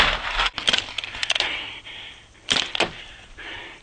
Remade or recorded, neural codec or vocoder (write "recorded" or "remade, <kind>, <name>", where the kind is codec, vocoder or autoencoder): recorded